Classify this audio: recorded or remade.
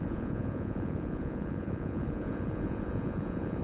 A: remade